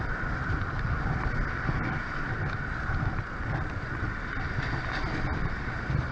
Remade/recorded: recorded